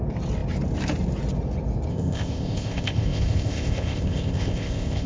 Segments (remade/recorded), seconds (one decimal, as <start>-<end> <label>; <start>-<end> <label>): 0.0-1.9 recorded; 1.9-5.1 remade